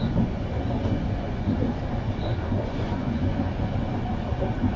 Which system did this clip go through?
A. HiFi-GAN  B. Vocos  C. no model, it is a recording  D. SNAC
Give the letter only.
B